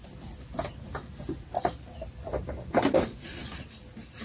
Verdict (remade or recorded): recorded